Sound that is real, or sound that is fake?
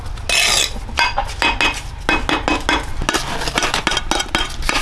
real